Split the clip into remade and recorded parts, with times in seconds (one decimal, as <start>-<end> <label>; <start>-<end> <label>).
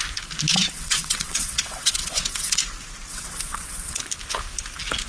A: 0.0-0.5 recorded; 0.5-2.6 remade; 2.6-3.1 recorded; 3.1-4.0 remade; 4.0-5.1 recorded